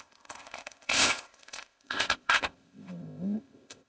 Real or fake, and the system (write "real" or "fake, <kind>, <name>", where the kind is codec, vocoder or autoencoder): fake, codec, ZipCodec